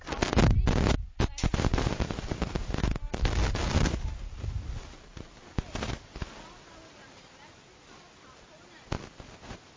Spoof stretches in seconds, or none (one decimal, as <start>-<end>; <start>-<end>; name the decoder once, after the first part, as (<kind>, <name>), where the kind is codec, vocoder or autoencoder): none